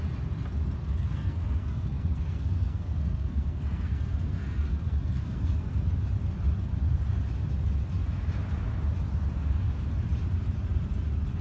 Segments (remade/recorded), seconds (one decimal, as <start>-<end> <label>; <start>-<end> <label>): 0.0-0.8 recorded; 0.8-5.9 remade; 5.9-11.4 recorded